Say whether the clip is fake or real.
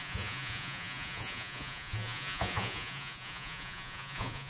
fake